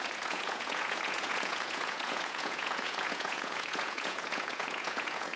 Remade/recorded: remade